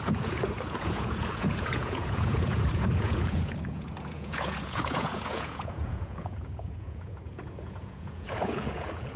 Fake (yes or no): yes